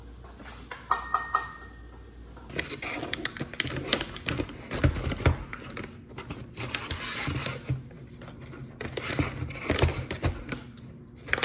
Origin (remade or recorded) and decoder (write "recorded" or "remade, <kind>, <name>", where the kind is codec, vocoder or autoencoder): recorded